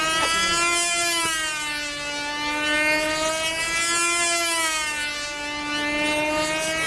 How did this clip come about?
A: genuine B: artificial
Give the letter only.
A